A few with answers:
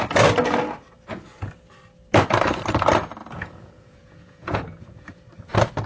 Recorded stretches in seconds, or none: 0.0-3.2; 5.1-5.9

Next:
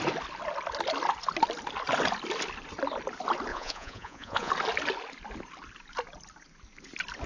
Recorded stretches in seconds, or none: 0.0-3.5; 4.5-7.3

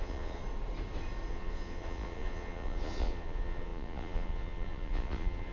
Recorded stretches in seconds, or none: 0.4-1.3